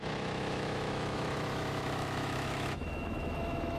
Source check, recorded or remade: remade